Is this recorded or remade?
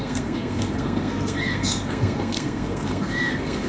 remade